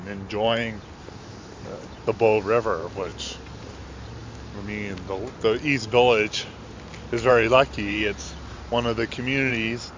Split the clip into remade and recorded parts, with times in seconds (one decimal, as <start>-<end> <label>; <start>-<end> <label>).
0.0-3.1 remade; 3.1-3.7 recorded; 3.7-4.2 remade; 4.2-7.3 recorded; 7.3-8.7 remade; 8.7-9.5 recorded; 9.5-10.0 remade